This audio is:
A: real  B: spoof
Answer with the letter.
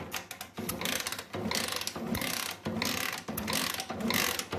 A